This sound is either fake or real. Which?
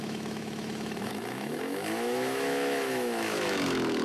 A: fake